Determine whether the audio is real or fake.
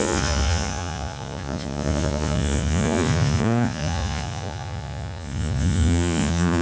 fake